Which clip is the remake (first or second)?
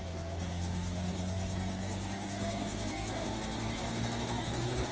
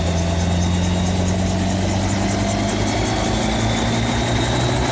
first